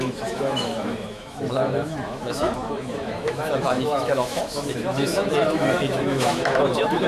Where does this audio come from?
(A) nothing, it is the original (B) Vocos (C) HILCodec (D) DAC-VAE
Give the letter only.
D